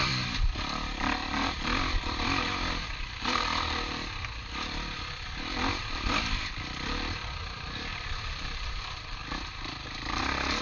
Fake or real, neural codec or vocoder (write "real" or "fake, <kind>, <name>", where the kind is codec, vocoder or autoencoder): fake, vocoder, BigVGAN v2